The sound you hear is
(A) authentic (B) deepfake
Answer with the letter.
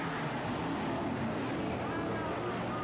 A